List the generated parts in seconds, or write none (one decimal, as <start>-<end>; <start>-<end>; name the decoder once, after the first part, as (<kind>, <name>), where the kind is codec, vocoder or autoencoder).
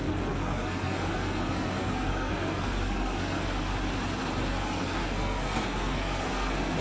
0.0-3.7 (codec, SNAC); 4.5-6.8